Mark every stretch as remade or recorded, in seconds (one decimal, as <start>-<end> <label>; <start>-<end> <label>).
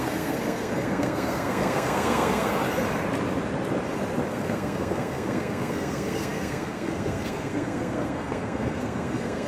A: 0.0-2.6 remade; 2.6-4.3 recorded; 4.3-9.5 remade